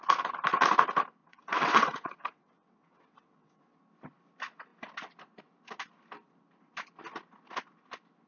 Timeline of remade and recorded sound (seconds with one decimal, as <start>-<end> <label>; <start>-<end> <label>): 0.0-1.2 recorded; 1.2-3.8 remade; 3.8-8.3 recorded